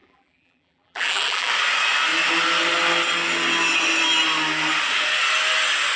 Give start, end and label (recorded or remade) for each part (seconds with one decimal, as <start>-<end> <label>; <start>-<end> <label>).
0.0-1.5 remade; 1.5-6.0 recorded